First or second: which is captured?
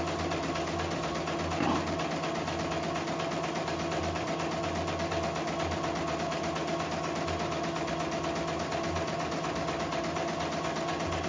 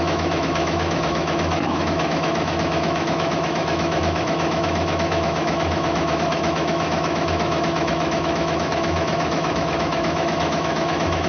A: first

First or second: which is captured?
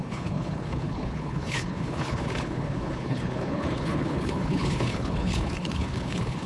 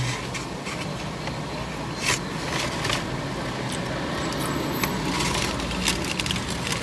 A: second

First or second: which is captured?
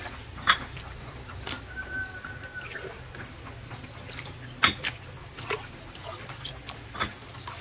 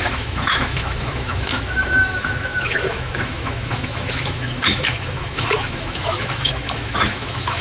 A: first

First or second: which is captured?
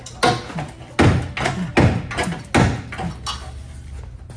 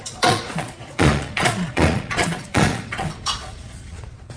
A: first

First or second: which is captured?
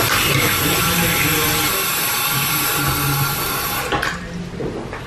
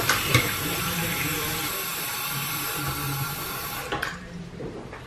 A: first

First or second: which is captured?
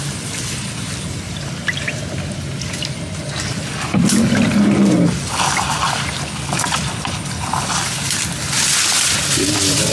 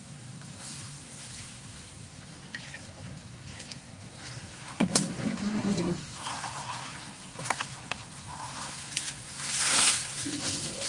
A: first